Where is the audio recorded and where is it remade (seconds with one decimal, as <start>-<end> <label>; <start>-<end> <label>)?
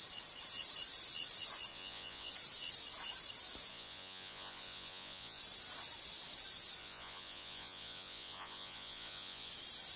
0.0-1.7 recorded; 1.7-2.3 remade; 2.3-3.7 recorded; 3.7-5.4 remade; 5.4-6.8 recorded; 6.8-9.5 remade; 9.5-10.0 recorded